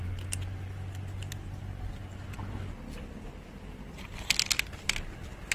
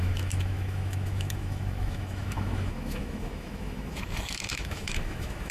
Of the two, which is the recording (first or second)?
first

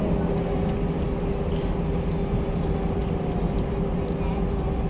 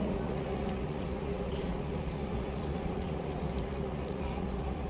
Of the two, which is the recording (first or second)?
first